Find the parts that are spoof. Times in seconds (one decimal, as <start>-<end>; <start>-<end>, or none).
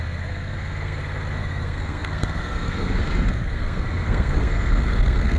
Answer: 0.0-5.4